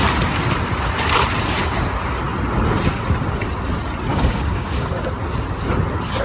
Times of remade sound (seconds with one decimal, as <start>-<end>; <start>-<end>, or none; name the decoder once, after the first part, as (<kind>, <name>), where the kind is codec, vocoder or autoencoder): 4.1-4.9 (codec, DAC)